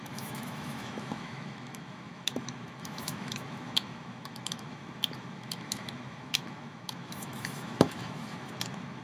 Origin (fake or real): fake